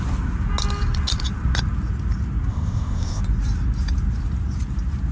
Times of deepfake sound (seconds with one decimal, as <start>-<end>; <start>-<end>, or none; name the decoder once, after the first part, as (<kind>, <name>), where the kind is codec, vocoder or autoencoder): 2.5-3.2 (codec, ZipCodec)